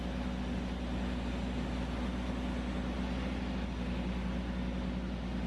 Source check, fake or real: real